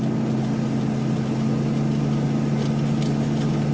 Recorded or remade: recorded